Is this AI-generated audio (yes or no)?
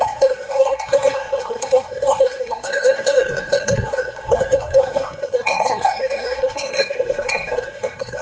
yes